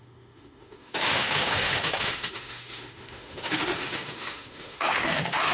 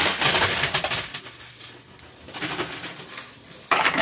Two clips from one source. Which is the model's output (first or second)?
first